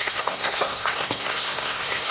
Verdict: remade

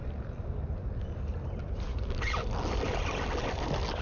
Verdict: recorded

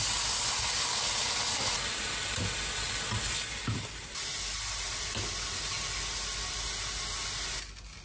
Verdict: recorded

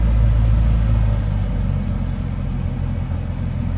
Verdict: recorded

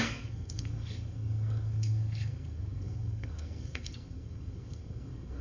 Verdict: remade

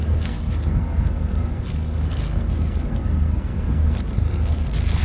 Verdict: remade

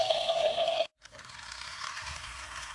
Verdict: remade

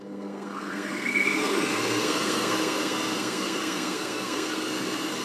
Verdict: remade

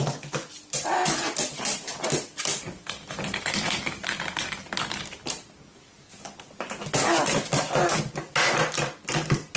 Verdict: recorded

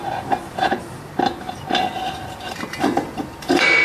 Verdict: recorded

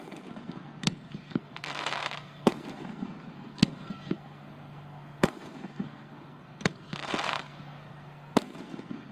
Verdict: remade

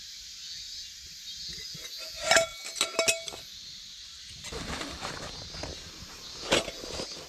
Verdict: recorded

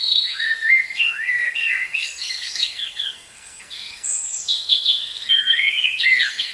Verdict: remade